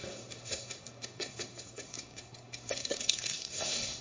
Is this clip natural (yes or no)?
no